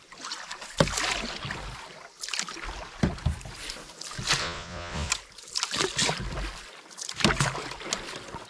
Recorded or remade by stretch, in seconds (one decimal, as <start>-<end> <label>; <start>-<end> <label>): 0.0-4.4 recorded; 4.4-5.1 remade; 5.1-8.5 recorded